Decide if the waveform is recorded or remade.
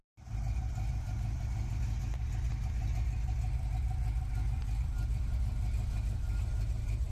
recorded